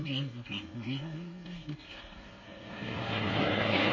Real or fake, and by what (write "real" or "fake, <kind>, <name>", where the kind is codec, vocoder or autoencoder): fake, codec, SNAC